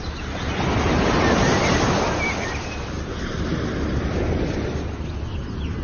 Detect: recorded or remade recorded